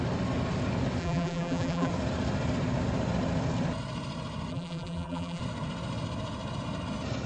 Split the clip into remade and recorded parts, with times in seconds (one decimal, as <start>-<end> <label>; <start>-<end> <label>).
0.0-1.0 recorded; 1.0-1.9 remade; 1.9-4.5 recorded; 4.5-5.4 remade; 5.4-7.3 recorded